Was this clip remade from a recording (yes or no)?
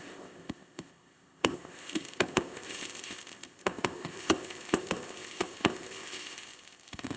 yes